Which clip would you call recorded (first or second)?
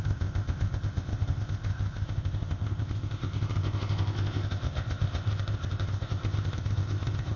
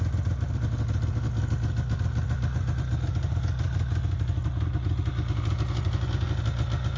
second